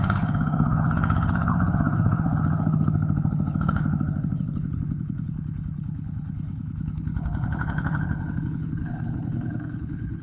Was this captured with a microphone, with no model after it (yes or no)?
no